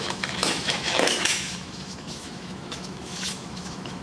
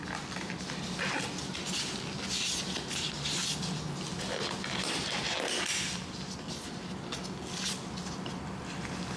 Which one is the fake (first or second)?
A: first